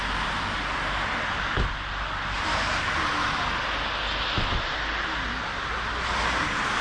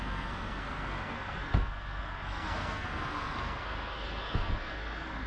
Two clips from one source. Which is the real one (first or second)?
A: first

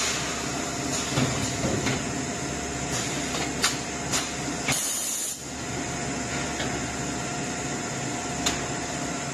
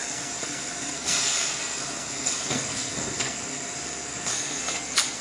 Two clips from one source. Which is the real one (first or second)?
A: first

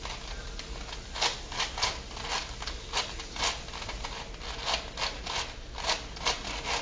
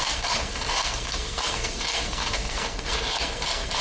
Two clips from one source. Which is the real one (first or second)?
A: first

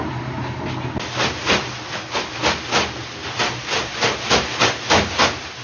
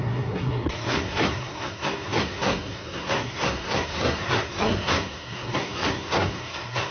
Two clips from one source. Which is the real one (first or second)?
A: first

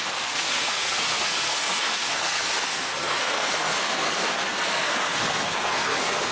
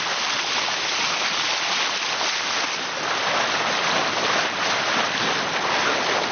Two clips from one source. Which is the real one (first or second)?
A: second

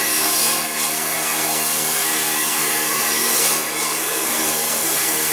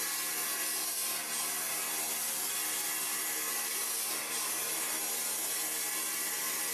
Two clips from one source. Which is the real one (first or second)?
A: second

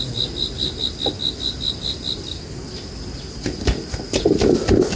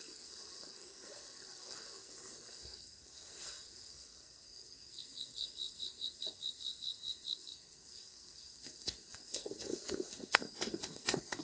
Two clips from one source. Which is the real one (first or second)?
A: first